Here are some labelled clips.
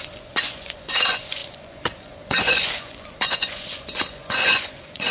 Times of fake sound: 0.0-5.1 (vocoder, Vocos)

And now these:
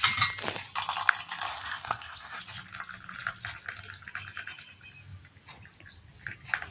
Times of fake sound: 1.5-2.4 (codec, SNAC)